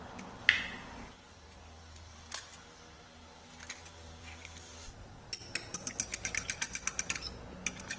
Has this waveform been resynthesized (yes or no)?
no